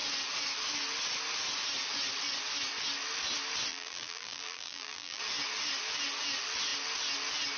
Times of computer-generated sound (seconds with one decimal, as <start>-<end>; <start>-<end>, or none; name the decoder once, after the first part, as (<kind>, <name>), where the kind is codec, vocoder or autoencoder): 3.7-5.2 (vocoder, BigVGAN v2)